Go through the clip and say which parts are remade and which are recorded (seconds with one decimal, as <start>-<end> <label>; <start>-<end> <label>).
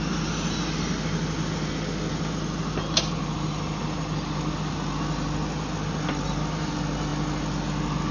0.0-8.1 recorded